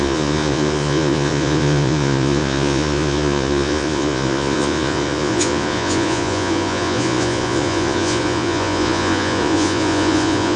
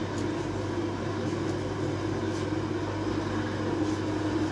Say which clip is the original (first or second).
second